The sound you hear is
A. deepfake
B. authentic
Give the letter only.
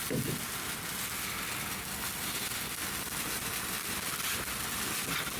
B